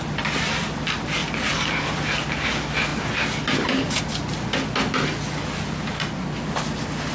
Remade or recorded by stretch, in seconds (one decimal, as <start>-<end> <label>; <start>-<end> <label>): 0.0-7.1 recorded